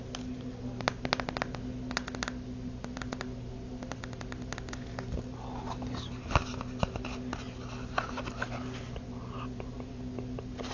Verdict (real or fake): real